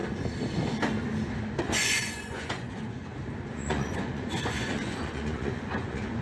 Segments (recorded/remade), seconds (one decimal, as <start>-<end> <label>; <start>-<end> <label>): 0.0-1.6 recorded; 1.6-3.0 remade; 3.0-3.5 recorded; 3.5-6.2 remade